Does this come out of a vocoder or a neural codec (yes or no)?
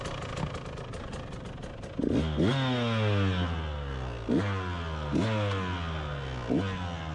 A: no